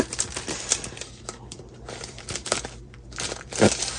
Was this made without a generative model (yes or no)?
no